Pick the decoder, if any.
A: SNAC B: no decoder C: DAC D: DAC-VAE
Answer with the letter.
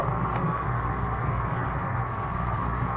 A